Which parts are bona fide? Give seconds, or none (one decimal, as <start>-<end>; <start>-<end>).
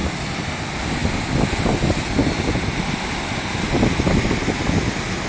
0.0-5.3